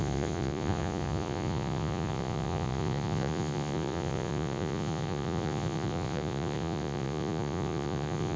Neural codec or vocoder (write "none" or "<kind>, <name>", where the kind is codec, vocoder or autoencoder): vocoder, Vocos